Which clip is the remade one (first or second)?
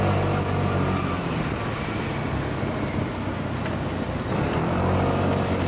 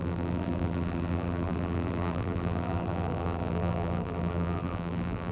second